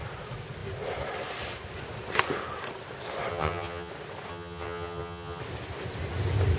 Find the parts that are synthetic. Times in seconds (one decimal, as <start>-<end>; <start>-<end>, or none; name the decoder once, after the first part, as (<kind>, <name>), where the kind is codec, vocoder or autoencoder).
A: 3.3-3.9 (vocoder, HiFi-GAN); 4.3-5.4